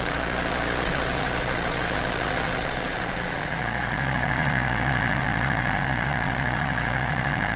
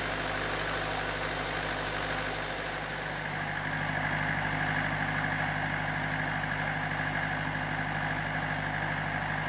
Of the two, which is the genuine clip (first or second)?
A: second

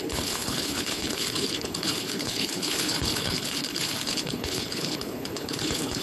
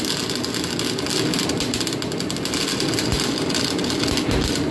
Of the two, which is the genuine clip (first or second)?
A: second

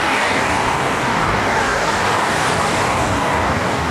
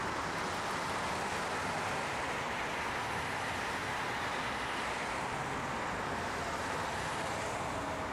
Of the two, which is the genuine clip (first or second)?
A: second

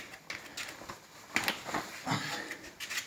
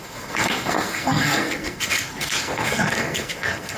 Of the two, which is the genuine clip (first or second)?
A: first